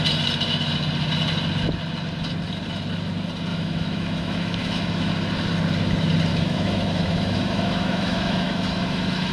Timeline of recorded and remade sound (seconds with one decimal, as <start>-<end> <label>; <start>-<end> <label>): 0.0-3.5 recorded; 3.5-5.1 remade; 5.1-6.3 recorded; 6.3-9.3 remade